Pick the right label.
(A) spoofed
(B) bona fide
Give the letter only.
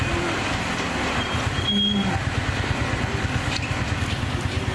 B